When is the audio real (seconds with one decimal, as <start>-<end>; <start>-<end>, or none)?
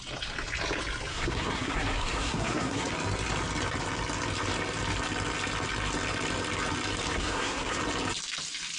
0.0-1.1; 2.9-7.2; 7.8-8.8